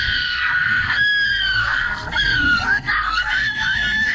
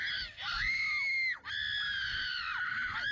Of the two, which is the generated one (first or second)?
first